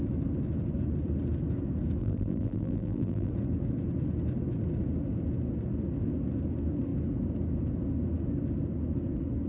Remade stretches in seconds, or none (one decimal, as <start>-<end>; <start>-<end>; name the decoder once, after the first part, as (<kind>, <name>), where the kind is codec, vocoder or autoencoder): 2.0-3.3 (vocoder, BigVGAN v2)